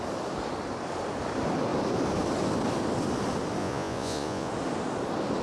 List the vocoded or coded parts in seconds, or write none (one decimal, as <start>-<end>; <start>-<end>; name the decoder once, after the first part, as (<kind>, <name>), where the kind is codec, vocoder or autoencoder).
3.6-4.5 (vocoder, Vocos)